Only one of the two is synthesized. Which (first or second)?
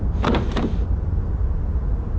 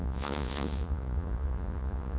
second